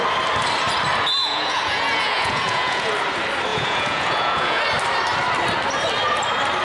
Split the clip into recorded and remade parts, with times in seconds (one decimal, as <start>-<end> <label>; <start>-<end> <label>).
0.0-1.2 recorded; 1.2-2.9 remade; 2.9-3.5 recorded; 3.5-4.6 remade; 4.6-6.6 recorded